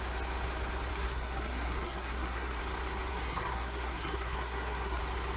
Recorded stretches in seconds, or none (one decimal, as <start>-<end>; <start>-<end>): 0.0-0.9; 2.6-3.1; 5.0-5.4